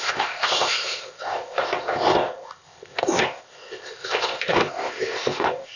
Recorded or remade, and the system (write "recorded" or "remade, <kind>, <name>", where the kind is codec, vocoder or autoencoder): remade, codec, ZipCodec